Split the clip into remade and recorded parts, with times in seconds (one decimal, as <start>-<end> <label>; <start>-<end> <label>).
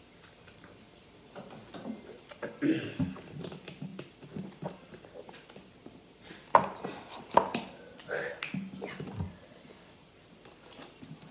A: 0.0-11.3 recorded